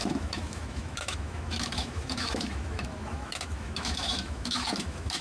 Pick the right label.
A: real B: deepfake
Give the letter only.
B